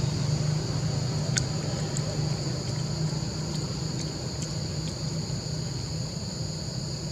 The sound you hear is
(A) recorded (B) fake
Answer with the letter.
A